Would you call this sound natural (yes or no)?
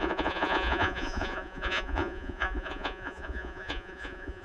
no